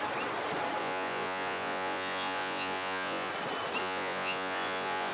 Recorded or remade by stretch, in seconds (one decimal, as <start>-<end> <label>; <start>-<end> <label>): 0.0-0.8 recorded; 0.8-3.3 remade; 3.3-3.8 recorded; 3.8-5.1 remade